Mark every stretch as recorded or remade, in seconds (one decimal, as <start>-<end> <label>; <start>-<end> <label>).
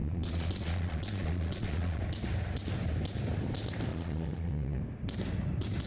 0.0-2.0 remade; 2.0-3.9 recorded; 3.9-4.8 remade; 4.8-5.9 recorded